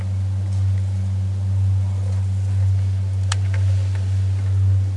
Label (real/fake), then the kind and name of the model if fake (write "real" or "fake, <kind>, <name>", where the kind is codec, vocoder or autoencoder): real